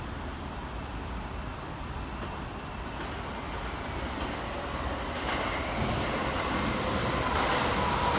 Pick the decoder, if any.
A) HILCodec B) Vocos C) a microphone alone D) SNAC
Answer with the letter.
C